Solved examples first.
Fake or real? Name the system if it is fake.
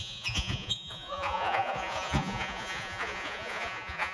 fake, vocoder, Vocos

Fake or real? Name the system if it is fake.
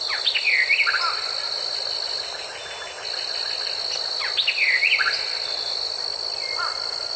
real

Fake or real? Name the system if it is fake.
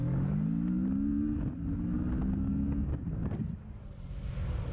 real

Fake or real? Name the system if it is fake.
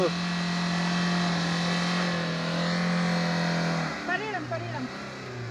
real